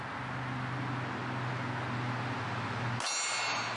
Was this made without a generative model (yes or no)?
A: yes